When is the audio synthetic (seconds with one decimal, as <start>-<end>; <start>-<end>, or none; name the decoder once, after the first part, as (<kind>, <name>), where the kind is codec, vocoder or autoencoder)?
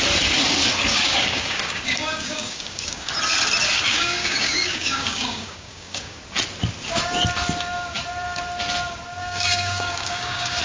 0.9-3.1 (codec, DAC); 3.9-6.2; 9.2-10.6